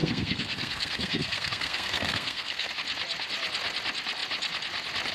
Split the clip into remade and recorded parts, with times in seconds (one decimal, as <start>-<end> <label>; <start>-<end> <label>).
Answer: 0.0-2.7 remade; 2.7-5.1 recorded